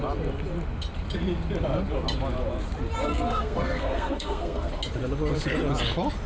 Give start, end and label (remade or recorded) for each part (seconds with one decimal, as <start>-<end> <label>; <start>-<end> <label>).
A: 0.0-3.0 recorded; 3.0-4.7 remade; 4.7-6.3 recorded